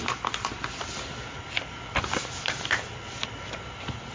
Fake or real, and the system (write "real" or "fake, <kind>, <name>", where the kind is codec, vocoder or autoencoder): real